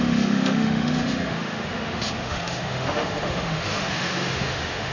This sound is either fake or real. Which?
fake